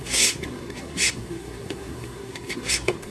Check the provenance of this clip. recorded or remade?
remade